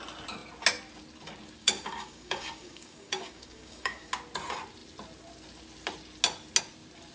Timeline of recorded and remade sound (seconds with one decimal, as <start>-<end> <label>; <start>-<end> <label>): 0.0-1.6 recorded; 1.6-4.1 remade; 4.1-7.1 recorded